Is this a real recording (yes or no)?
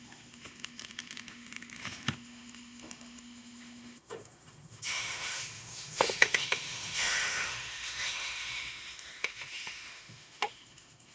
no